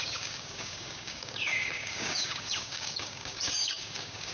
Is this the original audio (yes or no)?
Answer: no